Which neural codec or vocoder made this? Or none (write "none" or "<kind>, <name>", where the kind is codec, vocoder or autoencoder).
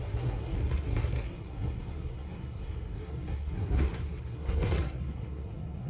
codec, SNAC